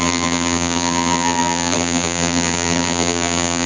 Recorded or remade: remade